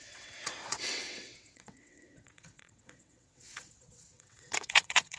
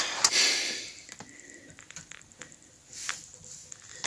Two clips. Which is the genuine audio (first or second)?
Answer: second